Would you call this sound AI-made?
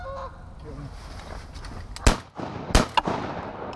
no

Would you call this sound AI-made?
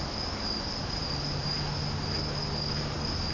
no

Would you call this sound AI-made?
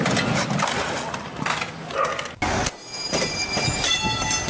no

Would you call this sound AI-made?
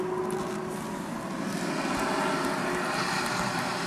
no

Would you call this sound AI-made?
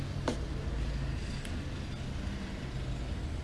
no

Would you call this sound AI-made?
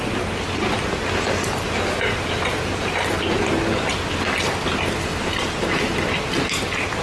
no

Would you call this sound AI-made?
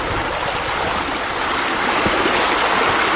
no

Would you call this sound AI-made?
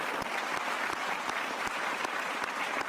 no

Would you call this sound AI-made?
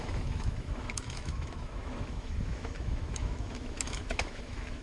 yes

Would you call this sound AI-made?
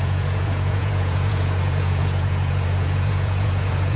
yes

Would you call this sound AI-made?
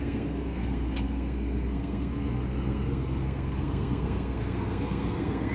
yes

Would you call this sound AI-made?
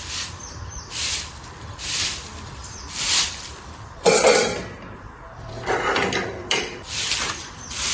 yes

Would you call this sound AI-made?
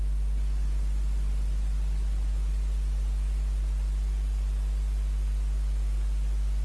no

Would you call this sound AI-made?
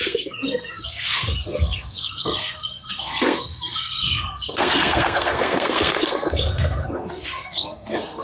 yes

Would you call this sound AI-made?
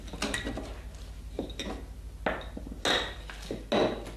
no